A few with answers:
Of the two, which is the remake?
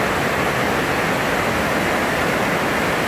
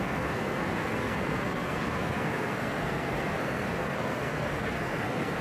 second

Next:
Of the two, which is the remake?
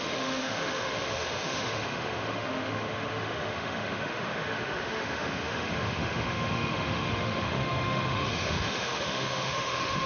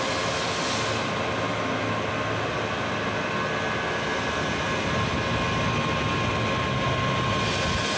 first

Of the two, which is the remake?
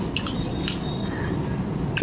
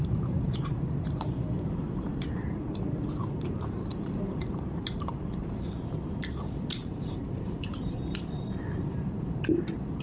second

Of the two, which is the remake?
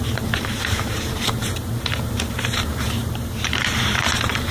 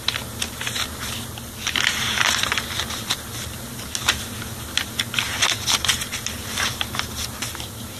first